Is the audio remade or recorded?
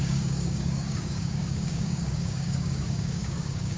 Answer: remade